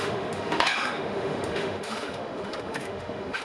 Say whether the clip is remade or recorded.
remade